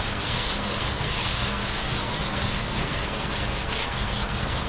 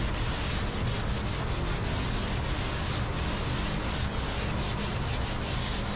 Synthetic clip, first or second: first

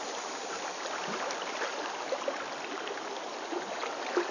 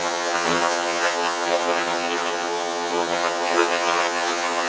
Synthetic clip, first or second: second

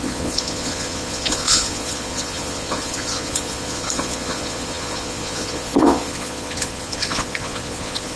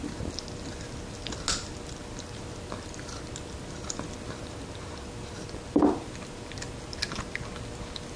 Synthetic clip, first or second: first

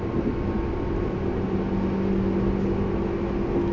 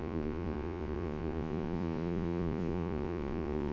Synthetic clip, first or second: second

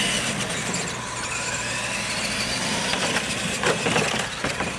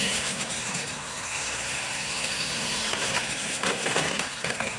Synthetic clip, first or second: second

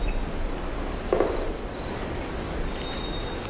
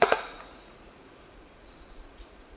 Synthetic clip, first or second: second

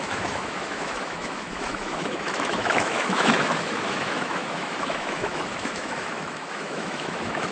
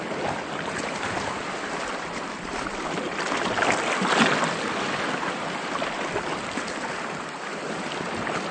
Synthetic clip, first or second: first